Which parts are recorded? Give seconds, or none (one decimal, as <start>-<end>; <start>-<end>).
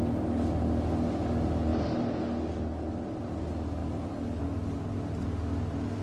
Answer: 0.0-6.0